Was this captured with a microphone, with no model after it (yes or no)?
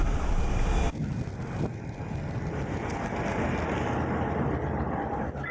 yes